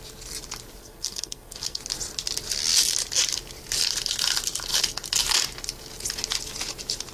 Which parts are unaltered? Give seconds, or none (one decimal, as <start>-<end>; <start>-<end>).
0.0-0.8; 1.8-7.1